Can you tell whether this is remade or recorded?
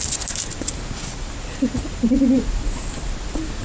recorded